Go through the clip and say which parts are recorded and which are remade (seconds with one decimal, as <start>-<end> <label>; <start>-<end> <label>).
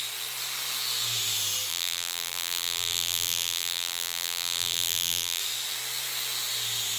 0.0-1.7 recorded; 1.7-5.4 remade; 5.4-7.0 recorded